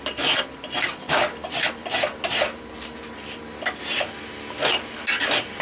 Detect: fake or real real